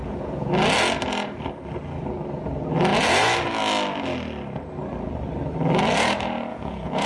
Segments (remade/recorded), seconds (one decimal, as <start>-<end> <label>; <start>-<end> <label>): 0.0-0.5 remade; 0.5-6.5 recorded; 6.5-7.1 remade